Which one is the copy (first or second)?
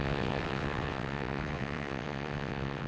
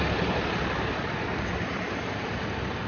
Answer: first